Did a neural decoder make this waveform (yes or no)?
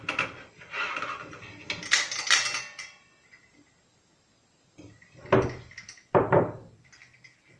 no